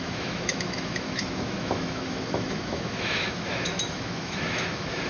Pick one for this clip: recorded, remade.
remade